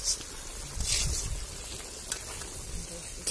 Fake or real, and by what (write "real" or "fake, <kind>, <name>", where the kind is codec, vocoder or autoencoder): real